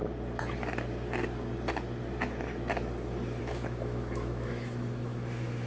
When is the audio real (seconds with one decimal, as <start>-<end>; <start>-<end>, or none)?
0.0-3.4